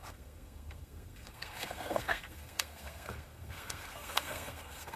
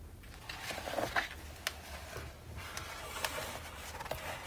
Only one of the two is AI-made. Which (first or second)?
first